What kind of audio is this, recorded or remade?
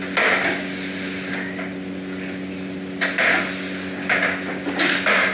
recorded